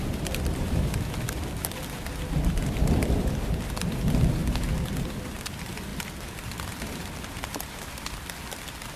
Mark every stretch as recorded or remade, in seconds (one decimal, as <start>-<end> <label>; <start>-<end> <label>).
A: 0.0-9.0 recorded

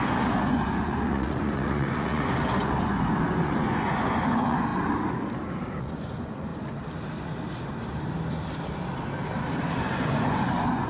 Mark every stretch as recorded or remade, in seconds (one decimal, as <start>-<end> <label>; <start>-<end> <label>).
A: 0.0-4.7 remade; 4.7-5.8 recorded; 5.8-6.5 remade; 6.5-9.8 recorded; 9.8-10.9 remade

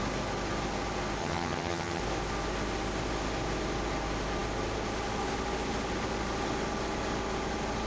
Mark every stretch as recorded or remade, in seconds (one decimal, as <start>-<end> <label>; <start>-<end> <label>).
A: 0.0-1.2 recorded; 1.2-2.0 remade; 2.0-7.9 recorded